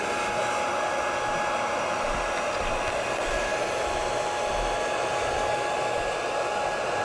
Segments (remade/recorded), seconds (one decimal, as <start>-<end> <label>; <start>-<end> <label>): 0.0-7.0 recorded